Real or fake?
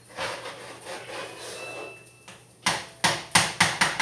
real